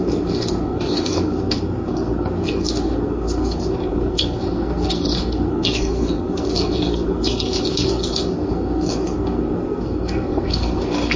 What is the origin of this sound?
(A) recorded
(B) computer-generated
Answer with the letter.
B